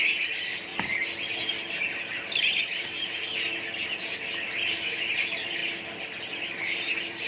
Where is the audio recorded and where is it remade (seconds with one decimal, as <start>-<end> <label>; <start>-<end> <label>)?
0.0-0.7 remade; 0.7-2.6 recorded; 2.6-3.3 remade; 3.3-4.4 recorded; 4.4-5.6 remade; 5.6-6.6 recorded; 6.6-7.3 remade